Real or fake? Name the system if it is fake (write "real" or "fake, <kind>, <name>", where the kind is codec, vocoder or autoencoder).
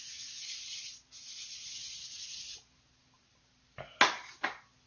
real